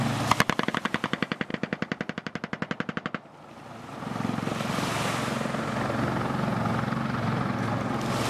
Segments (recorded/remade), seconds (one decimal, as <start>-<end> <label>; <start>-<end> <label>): 0.0-8.3 recorded